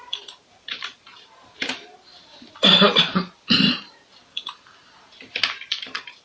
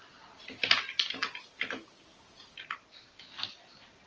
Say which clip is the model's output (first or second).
first